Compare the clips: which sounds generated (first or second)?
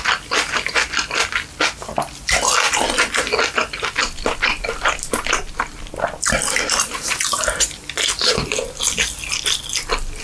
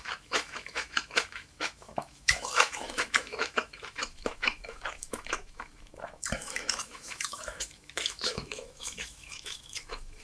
second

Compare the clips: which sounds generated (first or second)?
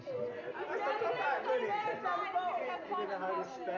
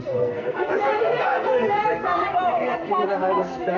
second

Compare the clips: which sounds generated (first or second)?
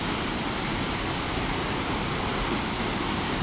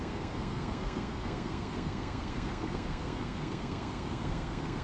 second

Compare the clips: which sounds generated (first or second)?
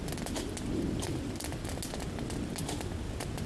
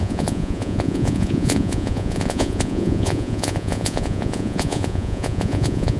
second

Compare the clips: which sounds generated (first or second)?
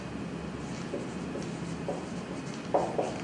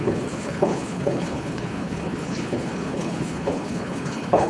second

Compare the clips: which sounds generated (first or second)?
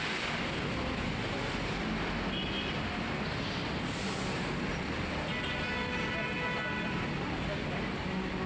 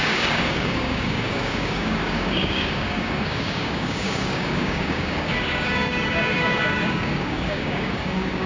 second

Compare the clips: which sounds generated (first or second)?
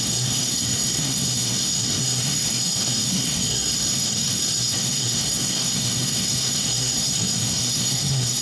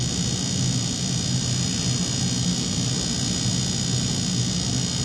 first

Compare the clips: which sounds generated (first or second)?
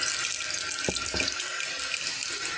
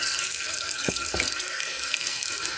second